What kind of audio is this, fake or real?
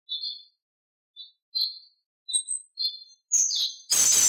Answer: real